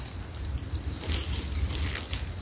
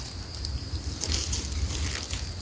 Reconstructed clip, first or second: first